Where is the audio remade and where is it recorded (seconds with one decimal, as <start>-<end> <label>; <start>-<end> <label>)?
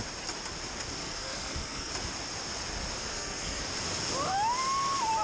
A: 0.0-1.0 recorded; 1.0-1.9 remade; 1.9-3.0 recorded; 3.0-3.6 remade; 3.6-5.2 recorded